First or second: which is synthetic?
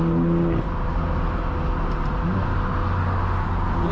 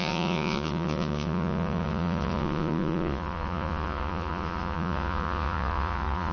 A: second